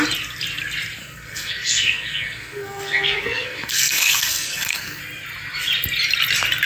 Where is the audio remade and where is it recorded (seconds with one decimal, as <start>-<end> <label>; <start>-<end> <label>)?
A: 0.0-1.0 recorded; 1.0-5.0 remade; 5.0-6.6 recorded